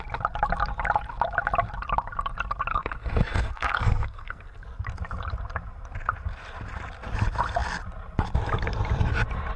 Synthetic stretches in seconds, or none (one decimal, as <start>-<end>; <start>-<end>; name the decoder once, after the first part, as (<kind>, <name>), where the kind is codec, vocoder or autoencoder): 2.7-4.6 (codec, SNAC)